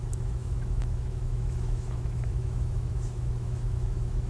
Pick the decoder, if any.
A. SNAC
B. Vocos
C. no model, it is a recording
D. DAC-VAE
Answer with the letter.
D